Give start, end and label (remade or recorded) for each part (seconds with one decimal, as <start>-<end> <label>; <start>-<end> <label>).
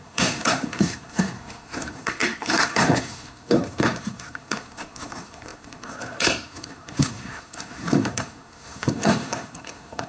0.0-10.1 remade